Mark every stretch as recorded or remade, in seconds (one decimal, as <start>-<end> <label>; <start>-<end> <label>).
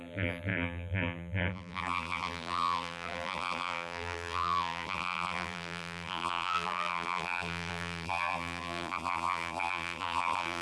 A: 0.0-10.6 remade